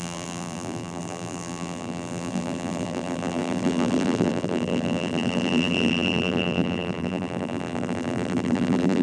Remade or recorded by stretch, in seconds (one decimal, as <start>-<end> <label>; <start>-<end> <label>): 0.0-9.0 remade